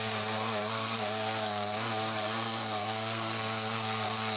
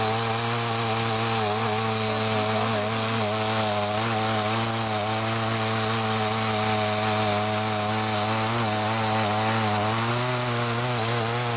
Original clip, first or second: second